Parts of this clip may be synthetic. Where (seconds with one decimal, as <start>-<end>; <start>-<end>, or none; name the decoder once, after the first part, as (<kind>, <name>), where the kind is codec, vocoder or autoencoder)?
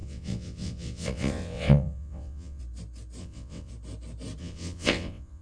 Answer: 0.0-2.6 (vocoder, WaveNeXt); 3.2-3.7; 4.4-5.4